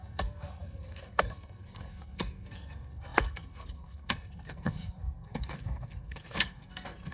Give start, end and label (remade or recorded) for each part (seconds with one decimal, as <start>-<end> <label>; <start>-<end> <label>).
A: 0.0-7.1 remade